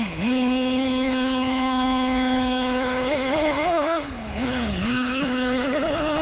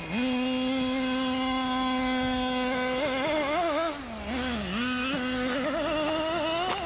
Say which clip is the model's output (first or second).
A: first